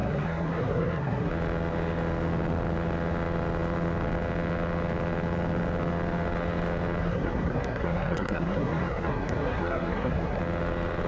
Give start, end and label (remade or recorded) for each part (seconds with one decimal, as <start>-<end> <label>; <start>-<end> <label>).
0.0-1.3 remade; 1.3-7.0 recorded; 7.0-10.4 remade; 10.4-11.1 recorded